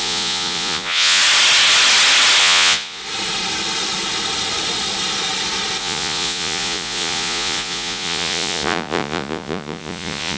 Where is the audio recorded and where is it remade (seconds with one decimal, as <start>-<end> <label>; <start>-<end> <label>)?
0.0-1.2 remade; 1.2-2.4 recorded; 2.4-3.0 remade; 3.0-5.8 recorded; 5.8-10.4 remade

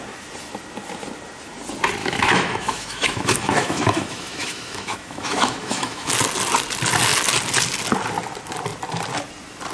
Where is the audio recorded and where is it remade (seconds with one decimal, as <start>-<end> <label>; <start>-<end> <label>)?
0.0-2.0 recorded; 2.0-6.1 remade; 6.1-9.7 recorded

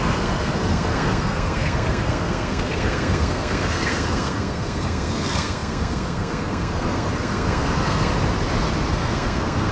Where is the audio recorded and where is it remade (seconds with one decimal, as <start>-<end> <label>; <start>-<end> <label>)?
0.0-8.1 remade; 8.1-8.9 recorded; 8.9-9.7 remade

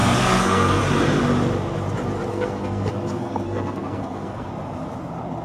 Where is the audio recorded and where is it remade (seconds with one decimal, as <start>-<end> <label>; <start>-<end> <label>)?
0.0-0.8 remade; 0.8-2.3 recorded; 2.3-4.5 remade; 4.5-5.4 recorded

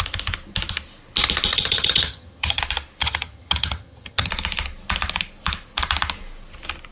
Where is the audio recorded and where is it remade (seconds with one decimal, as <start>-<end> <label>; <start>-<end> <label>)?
0.0-1.5 recorded; 1.5-2.6 remade; 2.6-3.0 recorded; 3.0-4.3 remade; 4.3-6.9 recorded

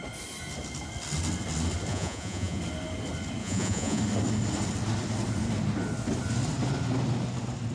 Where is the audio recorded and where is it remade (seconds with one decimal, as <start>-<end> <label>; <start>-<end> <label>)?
0.0-1.9 recorded; 1.9-2.6 remade; 2.6-3.4 recorded; 3.4-4.0 remade; 4.0-7.7 recorded

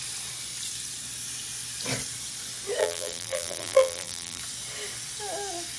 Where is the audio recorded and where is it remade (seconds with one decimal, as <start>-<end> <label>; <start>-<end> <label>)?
0.0-2.8 recorded; 2.8-4.4 remade; 4.4-5.8 recorded

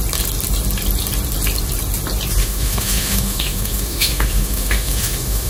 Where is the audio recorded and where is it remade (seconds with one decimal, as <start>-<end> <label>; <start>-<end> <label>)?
0.0-2.4 recorded; 2.4-5.5 remade